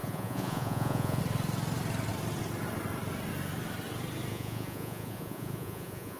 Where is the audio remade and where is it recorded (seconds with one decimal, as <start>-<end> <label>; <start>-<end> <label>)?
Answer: 0.0-1.2 remade; 1.2-4.3 recorded; 4.3-6.2 remade